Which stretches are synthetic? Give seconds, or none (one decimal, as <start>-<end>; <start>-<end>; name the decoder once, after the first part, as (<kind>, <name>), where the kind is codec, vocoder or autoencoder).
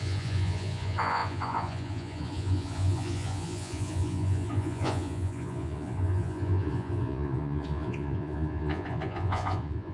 0.0-9.9 (vocoder, Vocos)